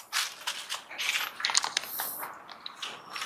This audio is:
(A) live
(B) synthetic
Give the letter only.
A